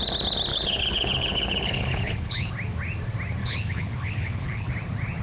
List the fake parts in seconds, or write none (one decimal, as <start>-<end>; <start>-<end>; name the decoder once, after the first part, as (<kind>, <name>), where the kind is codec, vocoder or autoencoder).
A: 0.5-2.5 (codec, HILCodec); 3.4-4.7